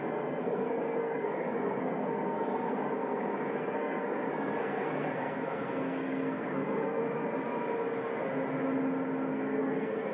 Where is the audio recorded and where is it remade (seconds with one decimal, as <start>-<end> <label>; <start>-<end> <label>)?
0.0-7.0 remade; 7.0-9.3 recorded; 9.3-10.1 remade